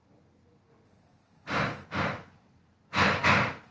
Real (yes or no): yes